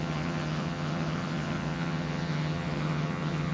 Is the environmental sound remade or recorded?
remade